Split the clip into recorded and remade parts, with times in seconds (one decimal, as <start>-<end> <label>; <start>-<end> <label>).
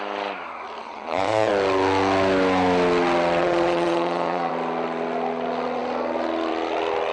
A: 0.0-0.8 recorded; 0.8-1.5 remade; 1.5-3.4 recorded; 3.4-4.5 remade; 4.5-7.1 recorded